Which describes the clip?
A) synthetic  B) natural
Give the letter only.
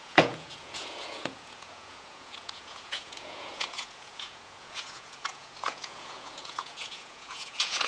A